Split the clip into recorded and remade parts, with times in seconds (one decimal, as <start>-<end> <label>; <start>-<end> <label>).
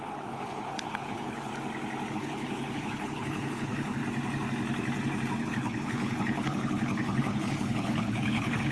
0.0-1.5 remade; 1.5-2.1 recorded; 2.1-4.0 remade; 4.0-5.4 recorded; 5.4-8.7 remade